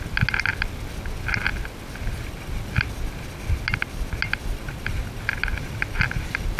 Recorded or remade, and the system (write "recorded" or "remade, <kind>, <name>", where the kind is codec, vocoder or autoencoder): recorded